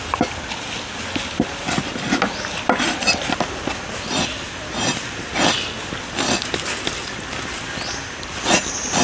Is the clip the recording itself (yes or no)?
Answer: yes